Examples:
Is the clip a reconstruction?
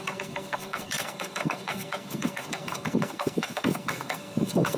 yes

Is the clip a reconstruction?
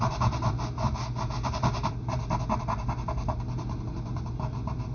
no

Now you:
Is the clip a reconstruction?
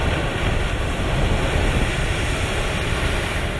no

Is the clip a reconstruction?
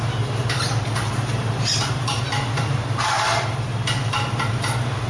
yes